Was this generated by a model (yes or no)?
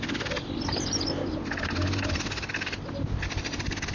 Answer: no